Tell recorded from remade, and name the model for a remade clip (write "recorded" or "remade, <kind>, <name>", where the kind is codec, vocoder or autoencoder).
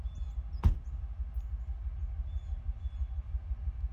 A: recorded